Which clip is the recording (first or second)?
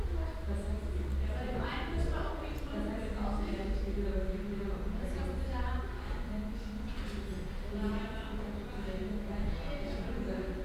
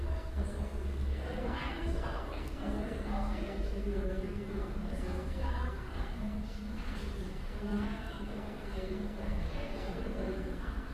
first